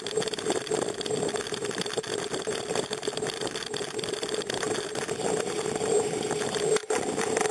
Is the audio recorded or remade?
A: recorded